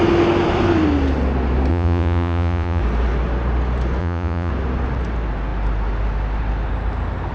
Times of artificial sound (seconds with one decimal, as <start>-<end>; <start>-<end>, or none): 1.7-2.8; 4.0-4.5